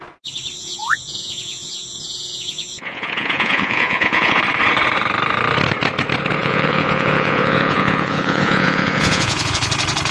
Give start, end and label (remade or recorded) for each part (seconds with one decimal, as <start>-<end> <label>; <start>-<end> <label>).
0.0-0.6 recorded; 0.6-4.4 remade; 4.4-6.4 recorded; 6.4-9.7 remade; 9.7-10.1 recorded